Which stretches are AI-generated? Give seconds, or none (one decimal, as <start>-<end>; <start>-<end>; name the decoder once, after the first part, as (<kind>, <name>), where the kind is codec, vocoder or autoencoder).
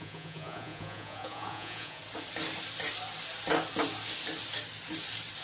0.0-2.0 (vocoder, Vocos)